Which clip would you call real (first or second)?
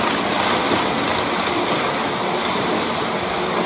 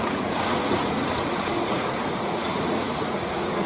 first